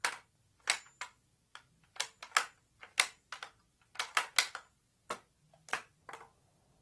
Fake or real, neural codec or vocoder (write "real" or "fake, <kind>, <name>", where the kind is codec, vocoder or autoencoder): real